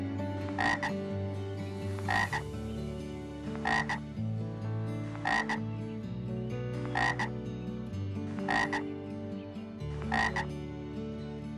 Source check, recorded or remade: recorded